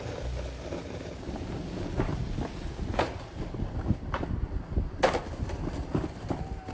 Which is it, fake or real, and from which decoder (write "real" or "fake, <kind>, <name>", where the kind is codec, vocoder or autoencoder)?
real